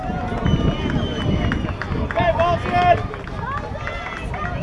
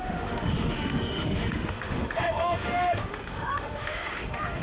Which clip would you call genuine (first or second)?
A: first